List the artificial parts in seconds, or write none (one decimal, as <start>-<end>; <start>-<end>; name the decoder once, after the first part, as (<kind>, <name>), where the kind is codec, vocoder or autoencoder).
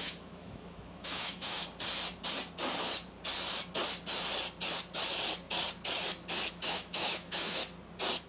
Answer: 0.0-1.6 (autoencoder, DAC-VAE); 6.5-7.6